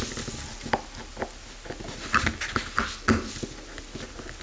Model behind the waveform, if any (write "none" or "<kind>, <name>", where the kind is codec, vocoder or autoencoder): none